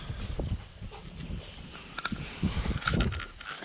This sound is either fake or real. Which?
real